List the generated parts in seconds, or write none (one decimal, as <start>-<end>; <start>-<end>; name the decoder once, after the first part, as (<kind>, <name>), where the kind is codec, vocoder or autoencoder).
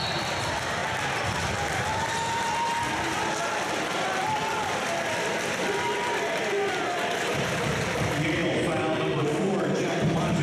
0.0-4.2 (vocoder, BigVGAN v2); 5.1-10.4